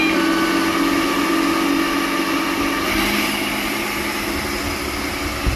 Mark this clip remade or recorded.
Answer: recorded